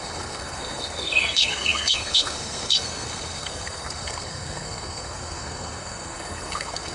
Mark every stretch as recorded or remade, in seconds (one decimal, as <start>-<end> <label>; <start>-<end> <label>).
0.0-6.9 remade